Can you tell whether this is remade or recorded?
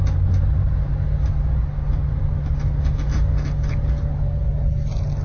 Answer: recorded